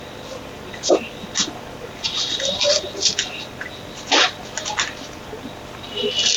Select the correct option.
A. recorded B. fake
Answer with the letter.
A